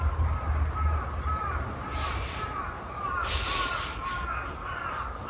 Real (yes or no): yes